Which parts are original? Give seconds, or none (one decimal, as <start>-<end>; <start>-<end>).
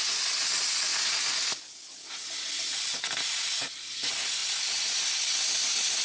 0.0-6.0